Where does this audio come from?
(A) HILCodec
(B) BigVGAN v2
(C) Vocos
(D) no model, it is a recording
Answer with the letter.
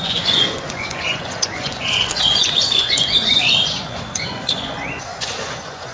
C